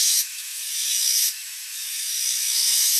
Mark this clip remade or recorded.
remade